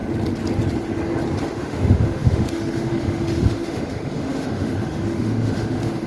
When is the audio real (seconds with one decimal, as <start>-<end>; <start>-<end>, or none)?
0.0-1.4